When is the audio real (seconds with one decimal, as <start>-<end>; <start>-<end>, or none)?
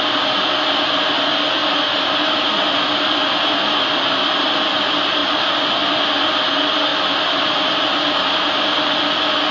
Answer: 0.0-1.6; 2.3-6.9; 9.0-9.5